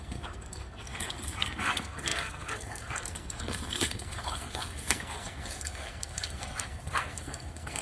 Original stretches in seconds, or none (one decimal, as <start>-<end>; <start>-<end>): none